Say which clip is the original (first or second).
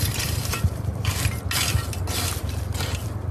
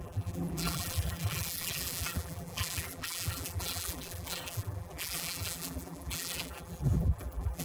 first